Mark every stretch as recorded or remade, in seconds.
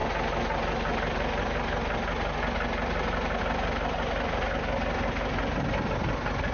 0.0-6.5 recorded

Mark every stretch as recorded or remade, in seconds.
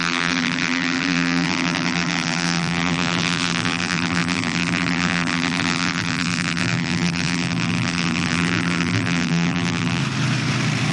0.0-10.0 remade; 10.0-10.9 recorded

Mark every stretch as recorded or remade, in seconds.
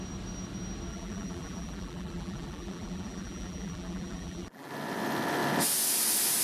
0.0-0.9 recorded; 0.9-4.7 remade; 4.7-6.4 recorded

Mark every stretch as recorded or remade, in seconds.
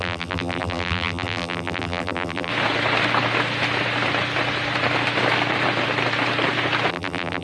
0.0-2.5 remade; 2.5-6.9 recorded; 6.9-7.4 remade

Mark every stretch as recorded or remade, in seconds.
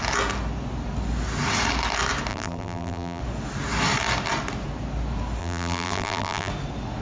0.0-2.3 recorded; 2.3-3.2 remade; 3.2-5.4 recorded; 5.4-6.5 remade; 6.5-7.0 recorded